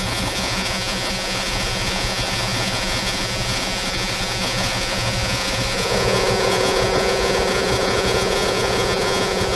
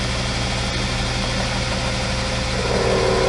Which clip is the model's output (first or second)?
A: first